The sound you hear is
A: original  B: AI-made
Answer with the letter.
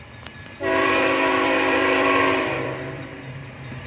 B